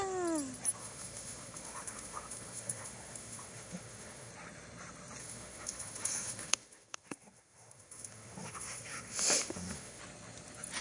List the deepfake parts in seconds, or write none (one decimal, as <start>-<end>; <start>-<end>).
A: 0.8-4.3; 5.2-10.0